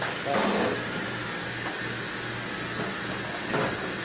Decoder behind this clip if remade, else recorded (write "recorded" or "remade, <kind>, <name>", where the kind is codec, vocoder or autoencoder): recorded